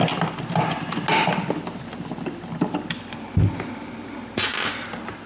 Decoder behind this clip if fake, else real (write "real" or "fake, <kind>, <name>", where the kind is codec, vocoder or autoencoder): real